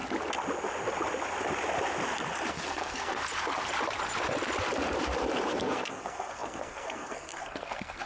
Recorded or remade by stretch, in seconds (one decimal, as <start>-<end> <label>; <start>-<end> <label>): 0.0-2.5 recorded; 2.5-3.3 remade; 3.3-5.5 recorded; 5.5-8.1 remade